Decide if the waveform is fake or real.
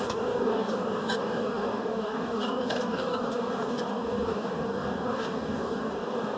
fake